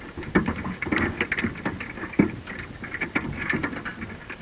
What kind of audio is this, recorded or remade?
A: recorded